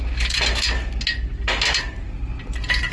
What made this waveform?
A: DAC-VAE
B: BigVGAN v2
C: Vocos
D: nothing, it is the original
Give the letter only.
D